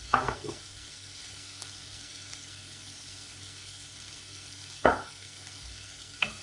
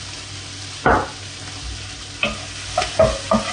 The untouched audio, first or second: second